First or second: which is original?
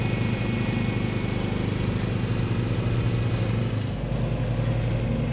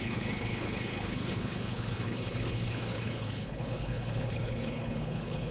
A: first